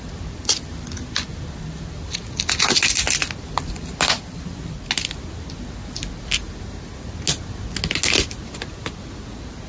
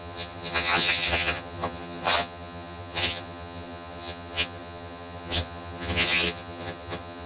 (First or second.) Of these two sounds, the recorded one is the first